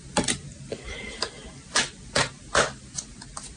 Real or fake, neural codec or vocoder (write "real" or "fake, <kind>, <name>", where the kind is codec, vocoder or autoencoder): real